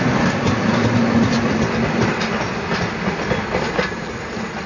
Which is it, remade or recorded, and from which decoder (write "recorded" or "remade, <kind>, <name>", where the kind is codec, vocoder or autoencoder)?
recorded